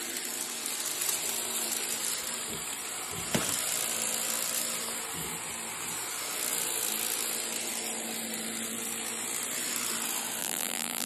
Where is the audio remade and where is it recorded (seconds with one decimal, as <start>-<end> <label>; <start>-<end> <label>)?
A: 0.0-10.4 recorded; 10.4-11.1 remade